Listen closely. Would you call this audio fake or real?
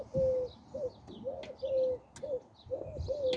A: real